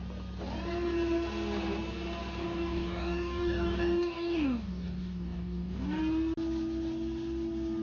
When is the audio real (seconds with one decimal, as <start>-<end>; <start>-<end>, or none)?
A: 0.0-2.4; 6.0-7.8